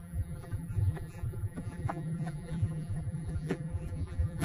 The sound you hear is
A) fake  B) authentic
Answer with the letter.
A